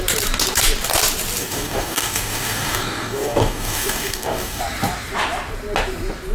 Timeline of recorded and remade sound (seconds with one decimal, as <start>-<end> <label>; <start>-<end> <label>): 0.0-1.4 recorded; 1.4-4.6 remade; 4.6-6.3 recorded